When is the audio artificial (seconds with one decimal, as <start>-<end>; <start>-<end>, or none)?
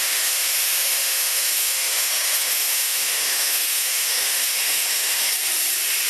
0.0-5.3